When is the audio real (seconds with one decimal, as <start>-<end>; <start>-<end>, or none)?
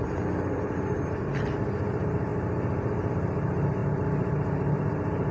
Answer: 0.0-5.3